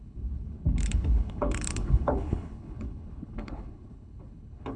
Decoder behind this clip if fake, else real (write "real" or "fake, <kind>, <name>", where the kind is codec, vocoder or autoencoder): fake, codec, HILCodec